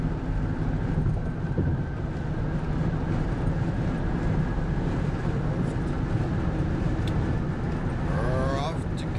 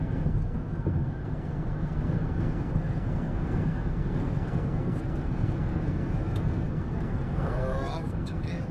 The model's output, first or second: second